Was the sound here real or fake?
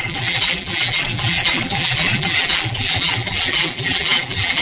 fake